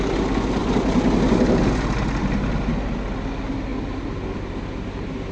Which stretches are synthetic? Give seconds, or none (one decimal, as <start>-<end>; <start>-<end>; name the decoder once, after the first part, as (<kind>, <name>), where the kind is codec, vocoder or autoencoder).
none